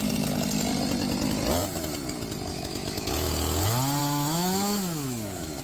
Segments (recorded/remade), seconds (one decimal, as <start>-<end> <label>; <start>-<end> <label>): 0.0-2.5 recorded; 2.5-3.3 remade; 3.3-4.0 recorded; 4.0-5.6 remade